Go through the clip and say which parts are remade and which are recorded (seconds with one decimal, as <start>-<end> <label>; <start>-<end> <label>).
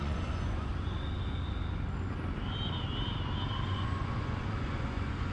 0.0-0.7 remade; 0.7-3.7 recorded; 3.7-5.3 remade